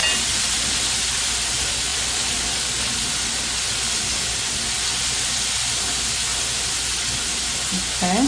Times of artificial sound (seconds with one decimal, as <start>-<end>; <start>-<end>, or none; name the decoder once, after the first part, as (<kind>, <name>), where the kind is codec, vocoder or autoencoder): 1.9-5.0 (vocoder, BigVGAN v2)